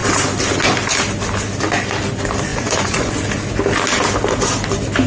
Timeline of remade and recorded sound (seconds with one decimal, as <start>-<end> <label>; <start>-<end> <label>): 0.0-2.5 recorded; 2.5-3.1 remade; 3.1-5.1 recorded